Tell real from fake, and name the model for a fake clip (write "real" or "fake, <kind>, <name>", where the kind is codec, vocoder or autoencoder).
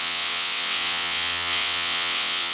fake, vocoder, WaveNeXt